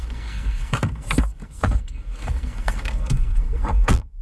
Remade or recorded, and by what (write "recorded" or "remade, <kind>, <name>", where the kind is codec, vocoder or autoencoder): remade, codec, SNAC